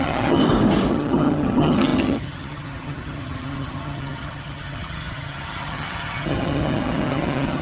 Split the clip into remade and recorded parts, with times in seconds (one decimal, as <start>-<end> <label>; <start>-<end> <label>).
0.0-0.4 remade; 0.4-0.9 recorded; 0.9-7.6 remade